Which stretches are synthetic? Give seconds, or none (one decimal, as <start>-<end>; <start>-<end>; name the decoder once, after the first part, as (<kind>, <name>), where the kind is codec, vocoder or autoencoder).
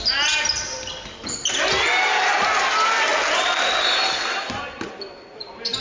none